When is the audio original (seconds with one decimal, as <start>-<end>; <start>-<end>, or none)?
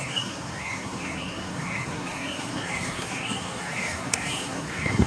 none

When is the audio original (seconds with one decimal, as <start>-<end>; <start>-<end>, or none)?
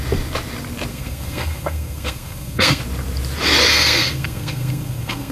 0.0-0.9; 2.8-3.7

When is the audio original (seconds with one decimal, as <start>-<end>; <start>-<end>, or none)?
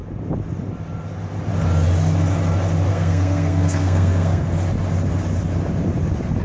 0.0-2.9; 4.5-6.4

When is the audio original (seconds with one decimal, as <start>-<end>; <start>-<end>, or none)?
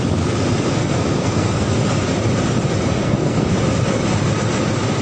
0.0-0.8; 1.7-3.0; 3.5-5.0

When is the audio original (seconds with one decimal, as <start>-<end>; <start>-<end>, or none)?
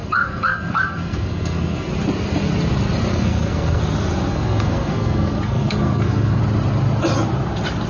1.9-3.1; 3.8-4.3; 6.4-7.9